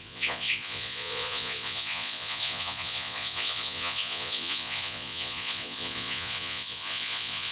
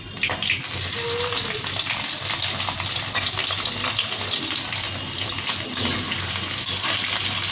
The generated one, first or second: first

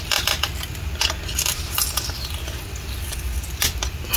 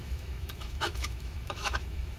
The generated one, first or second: second